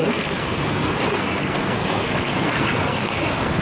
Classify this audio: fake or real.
fake